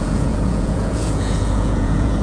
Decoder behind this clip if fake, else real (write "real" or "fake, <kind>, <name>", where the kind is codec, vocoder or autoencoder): fake, vocoder, Vocos